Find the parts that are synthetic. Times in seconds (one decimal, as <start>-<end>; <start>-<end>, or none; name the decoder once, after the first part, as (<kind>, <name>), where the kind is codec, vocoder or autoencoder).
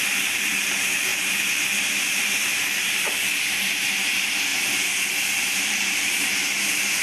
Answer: 0.0-4.5 (vocoder, BigVGAN v2); 5.4-7.0